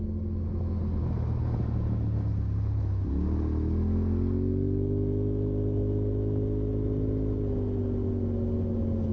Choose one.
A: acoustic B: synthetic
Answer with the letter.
A